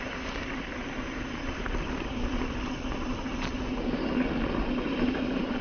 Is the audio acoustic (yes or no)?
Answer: yes